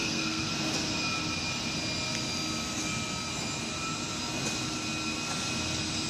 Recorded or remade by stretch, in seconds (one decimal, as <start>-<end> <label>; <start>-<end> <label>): 0.0-0.5 remade; 0.5-6.1 recorded